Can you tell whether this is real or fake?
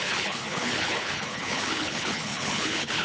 fake